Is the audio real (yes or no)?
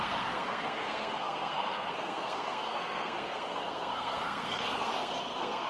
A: no